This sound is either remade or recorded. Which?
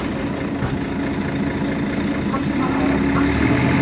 recorded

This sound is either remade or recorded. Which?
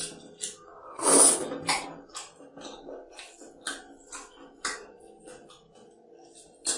recorded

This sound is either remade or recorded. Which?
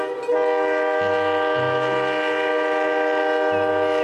recorded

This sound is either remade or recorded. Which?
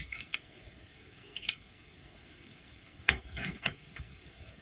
remade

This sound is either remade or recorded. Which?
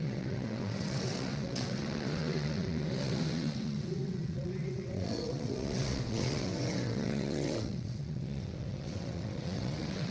remade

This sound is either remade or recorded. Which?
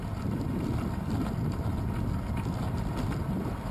recorded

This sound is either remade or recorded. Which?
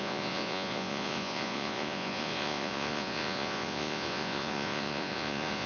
remade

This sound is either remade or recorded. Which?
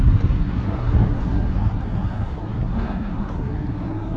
remade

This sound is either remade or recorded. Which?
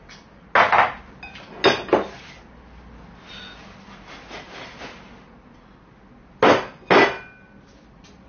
recorded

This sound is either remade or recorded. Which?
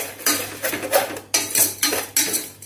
recorded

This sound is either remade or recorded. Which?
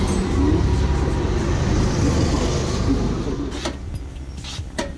recorded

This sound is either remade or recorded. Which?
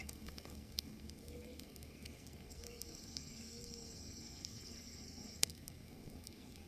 remade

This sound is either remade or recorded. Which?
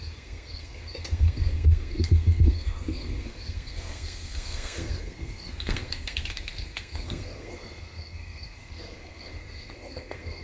remade